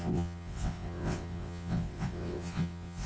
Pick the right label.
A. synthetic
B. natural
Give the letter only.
A